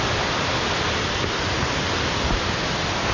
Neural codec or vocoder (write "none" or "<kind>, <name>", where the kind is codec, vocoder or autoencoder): none